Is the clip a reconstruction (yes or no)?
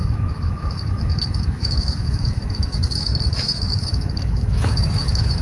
yes